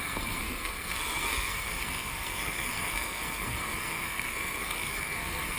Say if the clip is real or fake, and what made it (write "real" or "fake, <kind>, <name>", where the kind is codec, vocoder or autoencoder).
fake, codec, SNAC